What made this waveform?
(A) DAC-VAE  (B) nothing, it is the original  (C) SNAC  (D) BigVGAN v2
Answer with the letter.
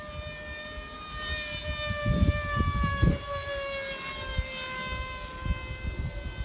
B